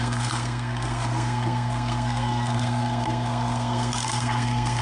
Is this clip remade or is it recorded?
remade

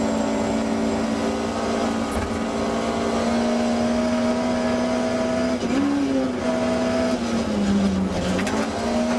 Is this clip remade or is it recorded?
recorded